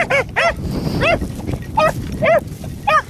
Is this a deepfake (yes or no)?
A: no